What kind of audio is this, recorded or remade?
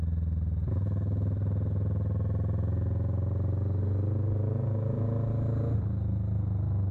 recorded